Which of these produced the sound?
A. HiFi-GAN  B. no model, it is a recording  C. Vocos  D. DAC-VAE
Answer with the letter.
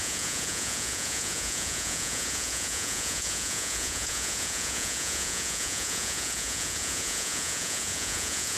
C